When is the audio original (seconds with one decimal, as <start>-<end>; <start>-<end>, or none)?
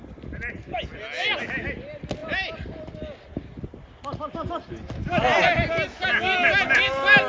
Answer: 0.0-7.3